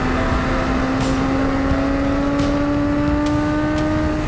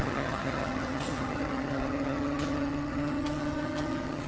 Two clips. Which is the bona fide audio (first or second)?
first